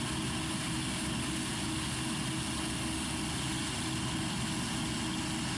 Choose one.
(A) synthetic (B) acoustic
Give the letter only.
B